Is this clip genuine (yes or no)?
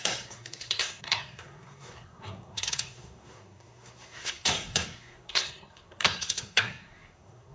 no